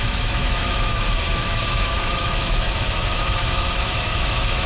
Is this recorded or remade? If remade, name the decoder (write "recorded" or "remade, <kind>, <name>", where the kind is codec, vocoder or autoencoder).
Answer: remade, autoencoder, DAC-VAE